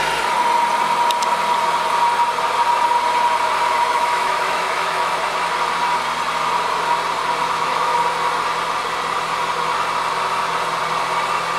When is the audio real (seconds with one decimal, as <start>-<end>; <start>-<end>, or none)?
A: 0.0-3.9; 5.1-7.4; 8.0-11.6